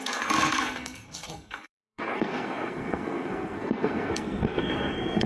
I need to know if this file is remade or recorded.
remade